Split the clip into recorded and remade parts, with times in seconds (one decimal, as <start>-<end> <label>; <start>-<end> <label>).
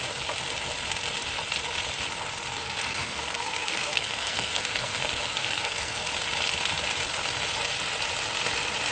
0.0-2.5 recorded; 2.5-6.1 remade; 6.1-8.9 recorded